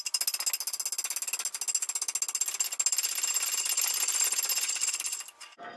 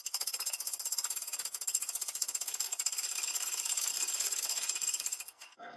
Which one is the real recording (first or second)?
first